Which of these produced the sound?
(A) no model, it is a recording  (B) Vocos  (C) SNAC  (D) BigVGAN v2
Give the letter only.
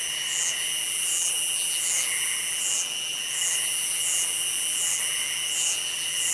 D